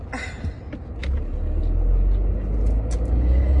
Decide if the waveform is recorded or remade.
recorded